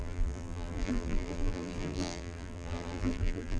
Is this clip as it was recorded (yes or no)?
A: no